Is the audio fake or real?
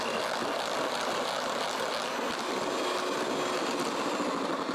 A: real